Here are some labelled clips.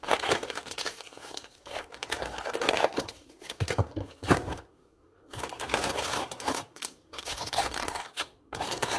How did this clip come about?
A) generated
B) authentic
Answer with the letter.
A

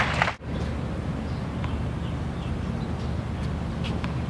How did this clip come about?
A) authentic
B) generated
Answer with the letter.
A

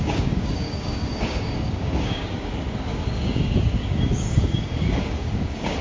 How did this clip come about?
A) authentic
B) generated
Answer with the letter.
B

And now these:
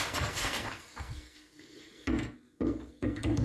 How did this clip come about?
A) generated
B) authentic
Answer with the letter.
A